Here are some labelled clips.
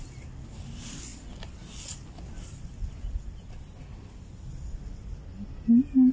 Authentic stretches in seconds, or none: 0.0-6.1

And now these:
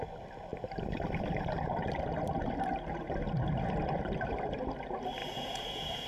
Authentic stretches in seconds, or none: 0.0-5.2

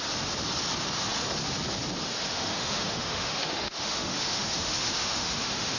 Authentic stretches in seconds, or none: 0.0-2.3